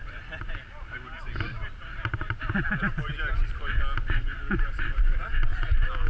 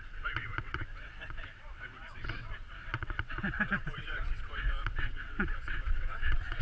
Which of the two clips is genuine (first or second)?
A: first